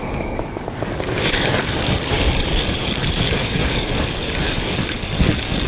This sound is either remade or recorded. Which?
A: remade